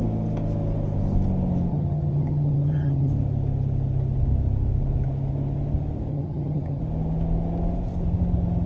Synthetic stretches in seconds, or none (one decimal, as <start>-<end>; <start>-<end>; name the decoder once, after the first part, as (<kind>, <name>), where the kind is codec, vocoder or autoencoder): 1.7-3.1 (vocoder, HiFi-GAN); 6.1-6.8